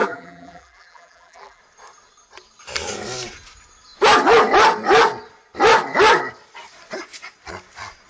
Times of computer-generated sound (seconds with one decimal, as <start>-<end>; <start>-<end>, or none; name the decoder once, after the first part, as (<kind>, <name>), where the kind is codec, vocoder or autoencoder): 0.0-1.6 (vocoder, BigVGAN v2)